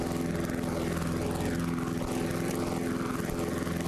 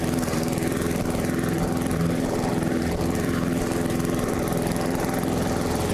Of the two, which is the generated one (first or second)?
second